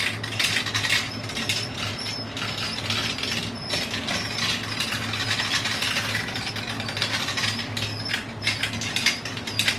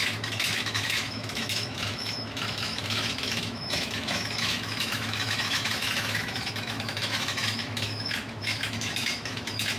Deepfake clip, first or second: second